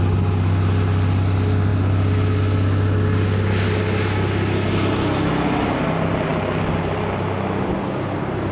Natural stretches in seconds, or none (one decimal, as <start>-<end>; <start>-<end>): 0.0-8.5